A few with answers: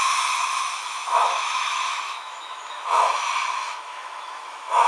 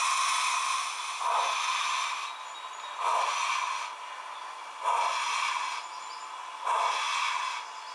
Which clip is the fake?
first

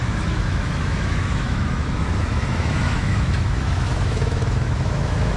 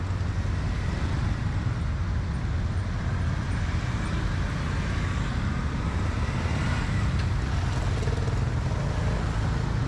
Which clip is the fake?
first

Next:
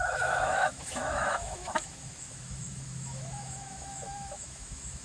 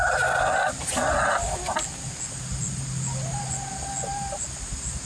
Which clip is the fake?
first